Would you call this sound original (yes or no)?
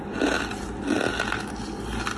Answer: yes